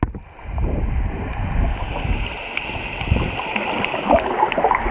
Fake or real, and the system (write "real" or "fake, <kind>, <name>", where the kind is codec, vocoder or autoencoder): real